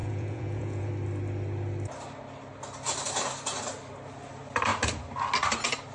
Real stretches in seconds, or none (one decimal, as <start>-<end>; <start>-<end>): 0.9-5.9